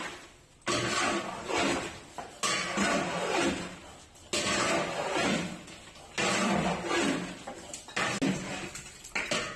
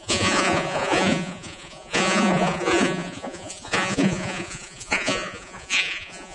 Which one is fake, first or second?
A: second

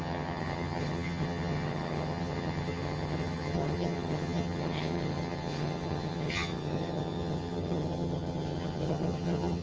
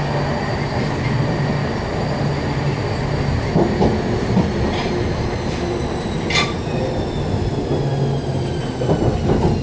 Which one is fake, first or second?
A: first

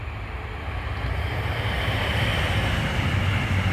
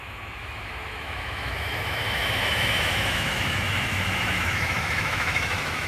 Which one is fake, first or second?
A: second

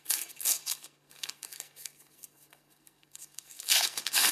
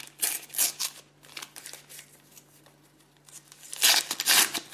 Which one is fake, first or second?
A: first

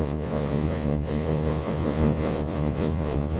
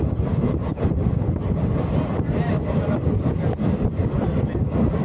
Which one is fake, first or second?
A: first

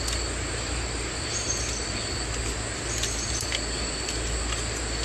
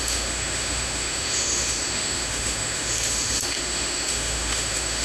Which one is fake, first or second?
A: second